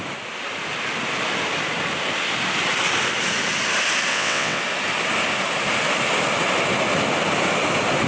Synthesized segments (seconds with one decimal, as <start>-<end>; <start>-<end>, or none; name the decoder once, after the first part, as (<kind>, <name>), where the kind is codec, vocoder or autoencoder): 4.1-4.6 (vocoder, WaveNeXt)